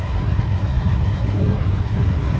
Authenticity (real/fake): fake